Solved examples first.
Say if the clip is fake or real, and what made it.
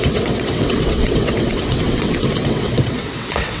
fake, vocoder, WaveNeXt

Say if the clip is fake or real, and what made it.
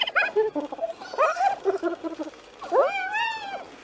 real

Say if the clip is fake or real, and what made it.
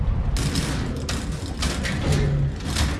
real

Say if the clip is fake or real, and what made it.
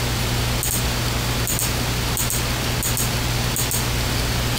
real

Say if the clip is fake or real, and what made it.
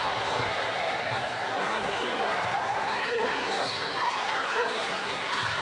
fake, codec, SNAC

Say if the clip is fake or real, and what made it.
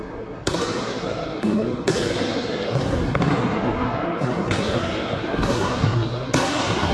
fake, codec, SNAC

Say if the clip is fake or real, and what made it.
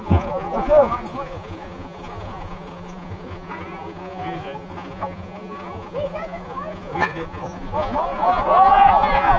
fake, vocoder, Vocos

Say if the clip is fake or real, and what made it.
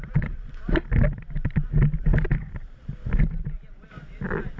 real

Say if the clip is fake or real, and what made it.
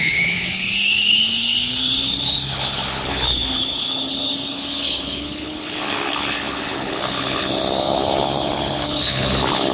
fake, codec, HILCodec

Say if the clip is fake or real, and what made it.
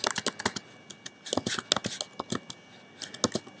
real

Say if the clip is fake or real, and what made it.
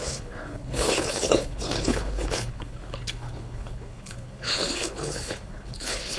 fake, codec, HILCodec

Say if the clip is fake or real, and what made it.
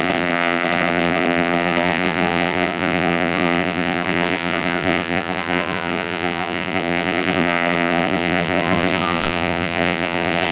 fake, vocoder, BigVGAN v2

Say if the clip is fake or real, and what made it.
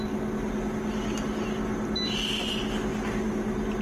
real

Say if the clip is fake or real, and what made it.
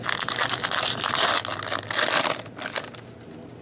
real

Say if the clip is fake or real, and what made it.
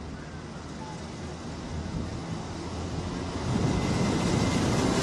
real